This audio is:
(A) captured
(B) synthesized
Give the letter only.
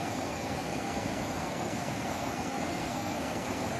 B